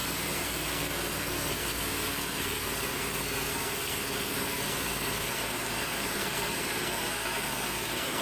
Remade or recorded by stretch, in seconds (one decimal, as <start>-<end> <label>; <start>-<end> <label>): 0.0-8.2 remade